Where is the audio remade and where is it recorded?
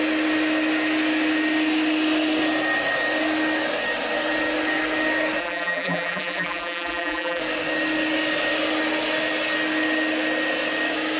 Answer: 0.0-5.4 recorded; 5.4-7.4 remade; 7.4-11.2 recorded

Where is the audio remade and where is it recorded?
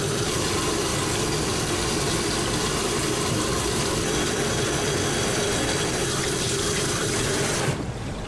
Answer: 0.0-0.9 remade; 0.9-5.9 recorded; 5.9-8.3 remade